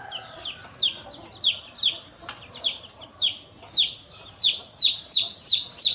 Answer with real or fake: real